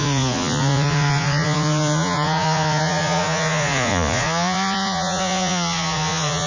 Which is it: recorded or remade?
remade